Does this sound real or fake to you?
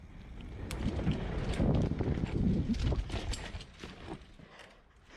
real